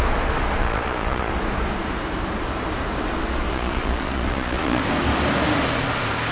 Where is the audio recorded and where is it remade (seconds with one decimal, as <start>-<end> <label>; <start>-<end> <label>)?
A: 0.0-0.6 recorded; 0.6-1.3 remade; 1.3-3.5 recorded; 3.5-4.8 remade; 4.8-6.3 recorded